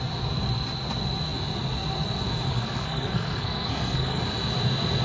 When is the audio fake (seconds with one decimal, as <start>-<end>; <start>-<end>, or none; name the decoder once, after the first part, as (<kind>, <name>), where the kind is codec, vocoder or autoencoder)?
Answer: 2.5-4.2 (codec, SNAC)